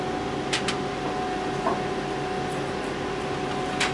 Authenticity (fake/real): real